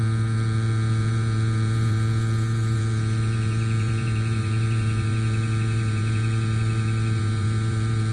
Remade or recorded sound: remade